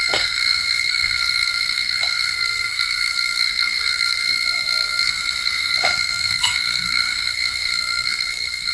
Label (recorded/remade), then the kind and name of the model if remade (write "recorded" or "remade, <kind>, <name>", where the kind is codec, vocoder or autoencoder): remade, codec, SNAC